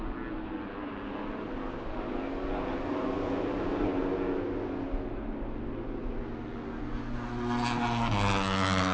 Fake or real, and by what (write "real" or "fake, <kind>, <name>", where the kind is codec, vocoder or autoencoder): real